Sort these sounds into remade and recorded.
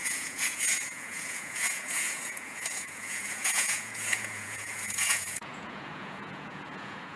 remade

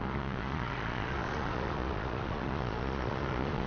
remade